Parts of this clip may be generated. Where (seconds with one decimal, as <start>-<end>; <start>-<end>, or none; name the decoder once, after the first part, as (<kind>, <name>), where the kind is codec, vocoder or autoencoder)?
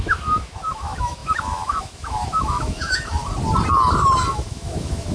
0.0-3.2 (autoencoder, DAC-VAE); 4.3-5.1